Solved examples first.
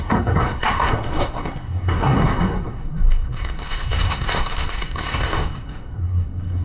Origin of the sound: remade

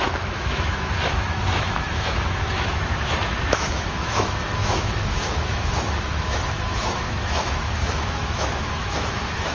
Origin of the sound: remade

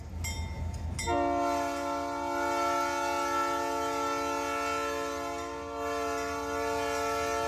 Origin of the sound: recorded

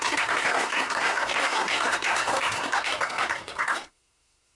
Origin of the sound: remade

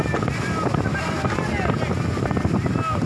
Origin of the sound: recorded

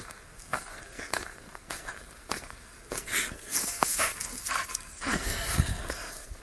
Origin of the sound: remade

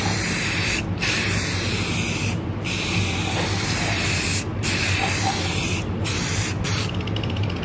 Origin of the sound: recorded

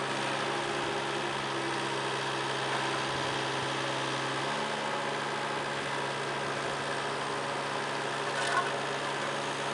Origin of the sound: recorded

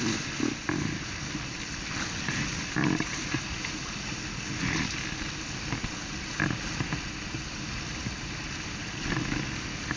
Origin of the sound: recorded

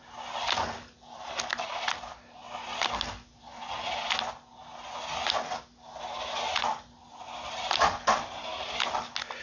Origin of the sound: recorded